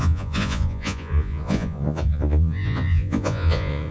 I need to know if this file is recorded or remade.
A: remade